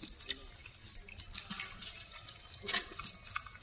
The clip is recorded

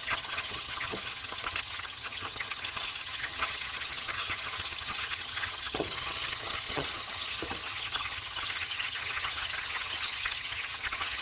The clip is remade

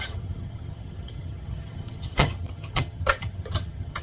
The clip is remade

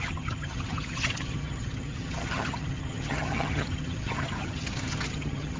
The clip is remade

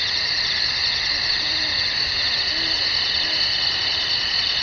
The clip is recorded